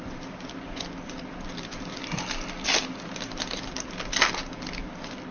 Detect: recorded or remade recorded